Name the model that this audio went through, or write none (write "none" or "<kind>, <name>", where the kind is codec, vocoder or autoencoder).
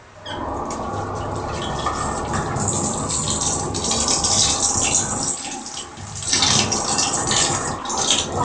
none